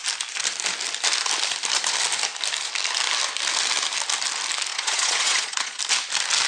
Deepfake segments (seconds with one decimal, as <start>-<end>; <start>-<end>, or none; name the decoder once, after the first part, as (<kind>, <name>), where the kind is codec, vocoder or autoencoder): 4.7-5.8 (vocoder, Vocos)

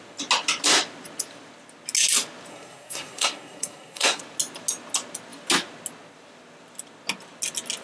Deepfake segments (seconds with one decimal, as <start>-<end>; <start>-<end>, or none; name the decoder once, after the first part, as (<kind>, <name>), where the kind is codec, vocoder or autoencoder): 2.5-4.2 (codec, SNAC)

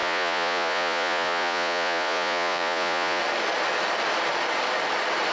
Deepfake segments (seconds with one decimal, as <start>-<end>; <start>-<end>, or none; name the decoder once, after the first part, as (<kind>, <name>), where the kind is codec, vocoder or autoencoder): 0.0-3.2 (vocoder, Vocos)

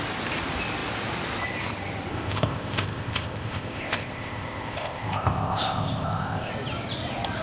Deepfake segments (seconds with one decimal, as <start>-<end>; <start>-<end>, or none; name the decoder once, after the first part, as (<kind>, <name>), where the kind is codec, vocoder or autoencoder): 2.1-6.5 (codec, ZipCodec)

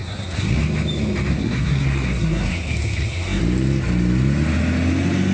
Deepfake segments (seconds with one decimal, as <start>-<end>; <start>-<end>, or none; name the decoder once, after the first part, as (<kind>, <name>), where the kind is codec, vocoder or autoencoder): 0.0-0.6 (codec, SNAC); 1.3-3.4

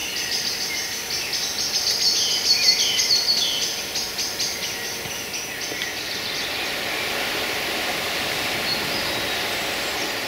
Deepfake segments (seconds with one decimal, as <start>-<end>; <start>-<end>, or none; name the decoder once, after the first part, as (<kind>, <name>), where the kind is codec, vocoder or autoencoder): none

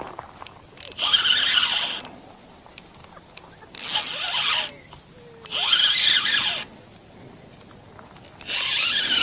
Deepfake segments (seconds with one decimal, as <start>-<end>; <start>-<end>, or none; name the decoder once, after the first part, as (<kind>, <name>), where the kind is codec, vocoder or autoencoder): none